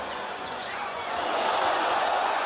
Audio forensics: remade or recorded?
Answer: remade